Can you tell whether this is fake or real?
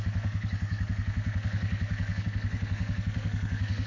fake